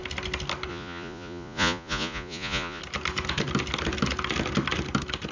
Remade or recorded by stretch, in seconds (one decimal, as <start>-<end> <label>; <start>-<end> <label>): 0.0-0.7 recorded; 0.7-2.8 remade; 2.8-5.3 recorded